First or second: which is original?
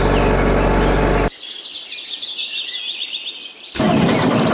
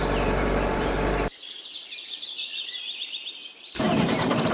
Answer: first